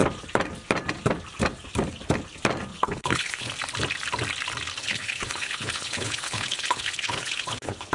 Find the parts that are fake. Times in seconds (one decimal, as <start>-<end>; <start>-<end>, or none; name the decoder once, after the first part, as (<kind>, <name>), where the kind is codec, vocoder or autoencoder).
2.7-3.5 (codec, HILCodec); 4.8-7.9